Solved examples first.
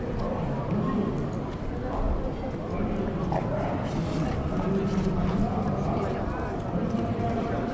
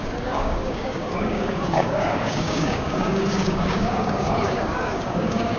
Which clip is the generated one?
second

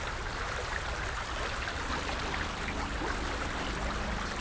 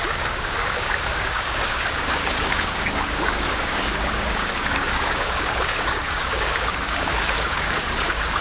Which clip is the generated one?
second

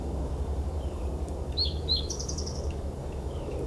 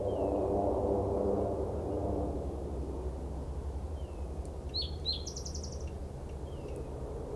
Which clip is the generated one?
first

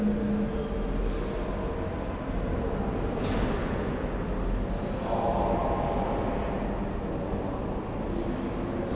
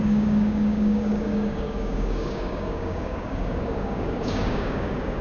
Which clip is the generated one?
second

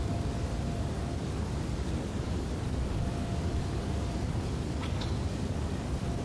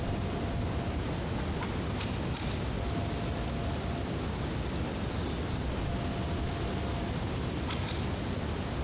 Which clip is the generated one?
first